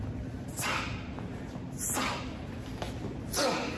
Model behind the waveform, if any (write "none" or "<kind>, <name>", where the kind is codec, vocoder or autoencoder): none